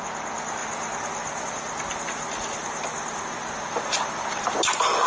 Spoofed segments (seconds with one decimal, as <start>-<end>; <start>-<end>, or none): none